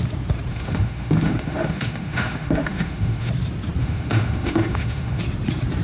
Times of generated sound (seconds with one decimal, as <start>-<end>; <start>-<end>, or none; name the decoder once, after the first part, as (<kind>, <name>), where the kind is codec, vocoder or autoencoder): 0.5-3.3 (autoencoder, DAC-VAE); 3.8-5.2